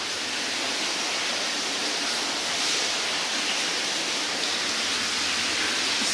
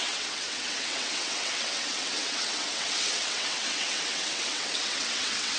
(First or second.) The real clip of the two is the first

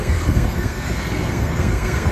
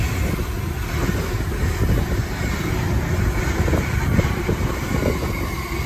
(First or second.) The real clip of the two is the second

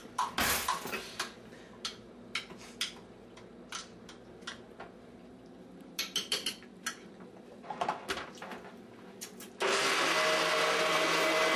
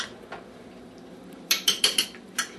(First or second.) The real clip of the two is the first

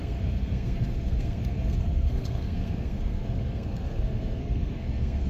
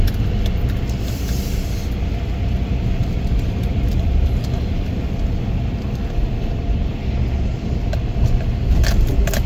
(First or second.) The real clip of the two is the second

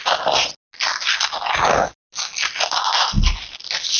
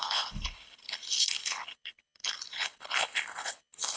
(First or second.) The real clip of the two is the first